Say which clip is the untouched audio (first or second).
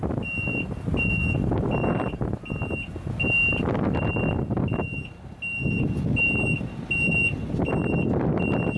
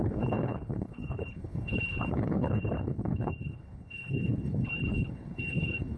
first